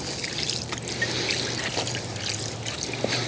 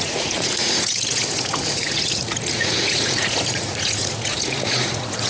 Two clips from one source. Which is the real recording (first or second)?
first